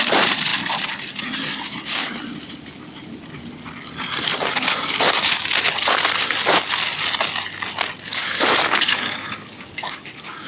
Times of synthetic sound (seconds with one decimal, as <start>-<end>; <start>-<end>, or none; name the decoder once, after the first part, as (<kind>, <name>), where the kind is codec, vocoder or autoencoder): 4.5-5.0 (codec, DAC); 8.1-10.5